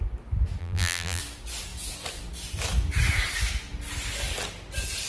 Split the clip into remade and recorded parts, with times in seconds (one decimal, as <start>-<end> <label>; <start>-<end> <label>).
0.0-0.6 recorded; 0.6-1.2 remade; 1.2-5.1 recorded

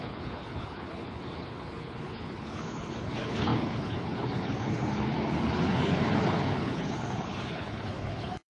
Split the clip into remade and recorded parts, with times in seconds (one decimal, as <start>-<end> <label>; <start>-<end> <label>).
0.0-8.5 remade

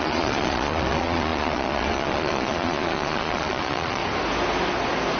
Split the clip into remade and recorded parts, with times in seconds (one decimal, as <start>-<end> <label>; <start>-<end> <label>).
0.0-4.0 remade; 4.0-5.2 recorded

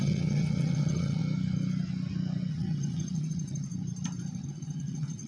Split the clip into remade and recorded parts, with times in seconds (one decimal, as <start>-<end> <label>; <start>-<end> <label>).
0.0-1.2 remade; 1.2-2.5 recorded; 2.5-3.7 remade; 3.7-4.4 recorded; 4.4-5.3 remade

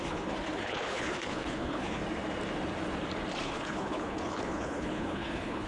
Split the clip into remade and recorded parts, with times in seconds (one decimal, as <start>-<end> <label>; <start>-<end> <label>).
0.0-2.0 remade; 2.0-3.4 recorded; 3.4-5.7 remade

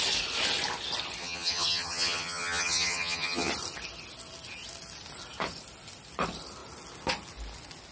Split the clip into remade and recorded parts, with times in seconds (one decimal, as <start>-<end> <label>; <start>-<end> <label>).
0.0-1.2 recorded; 1.2-3.5 remade; 3.5-7.9 recorded